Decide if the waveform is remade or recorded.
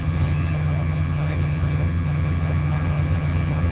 remade